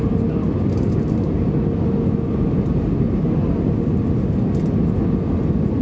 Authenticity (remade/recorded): recorded